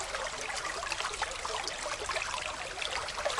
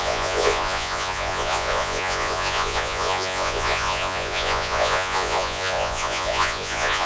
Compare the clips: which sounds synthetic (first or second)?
second